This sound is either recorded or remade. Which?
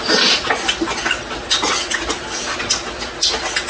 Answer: recorded